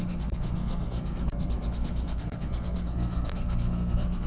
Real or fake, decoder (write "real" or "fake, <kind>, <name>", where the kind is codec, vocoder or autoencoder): fake, codec, SNAC